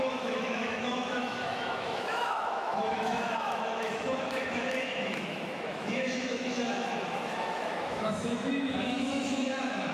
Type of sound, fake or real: fake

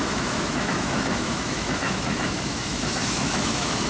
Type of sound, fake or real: fake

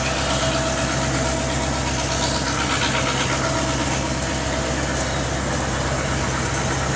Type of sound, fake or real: real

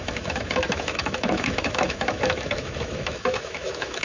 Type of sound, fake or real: fake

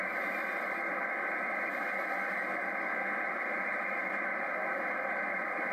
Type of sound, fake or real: real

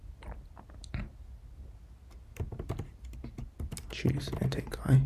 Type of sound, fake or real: real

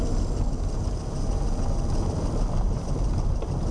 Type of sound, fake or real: real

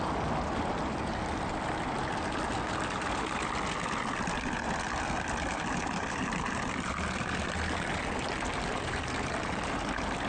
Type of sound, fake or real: real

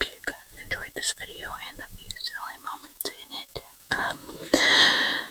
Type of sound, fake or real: fake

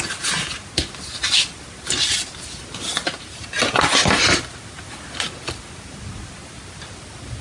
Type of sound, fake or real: real